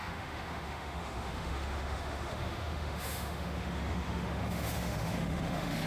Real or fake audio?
fake